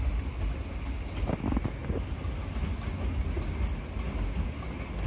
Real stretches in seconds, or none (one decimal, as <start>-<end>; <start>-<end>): 0.0-5.1